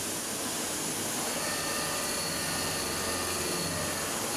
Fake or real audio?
real